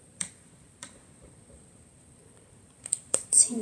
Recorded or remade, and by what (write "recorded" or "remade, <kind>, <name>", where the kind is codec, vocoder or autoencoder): remade, vocoder, BigVGAN v2